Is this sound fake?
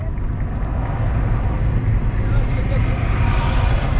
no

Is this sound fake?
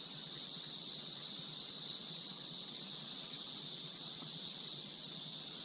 yes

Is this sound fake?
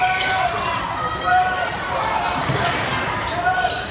yes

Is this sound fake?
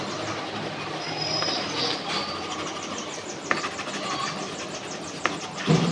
no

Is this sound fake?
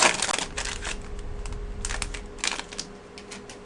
no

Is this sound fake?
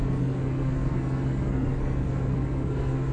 yes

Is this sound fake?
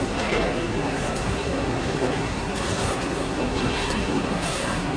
yes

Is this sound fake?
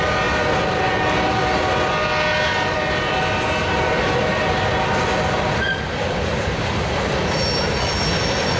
no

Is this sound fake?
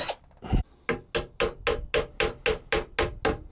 no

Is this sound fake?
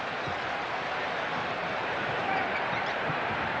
yes